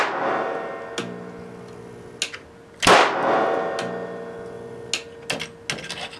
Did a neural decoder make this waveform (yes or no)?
no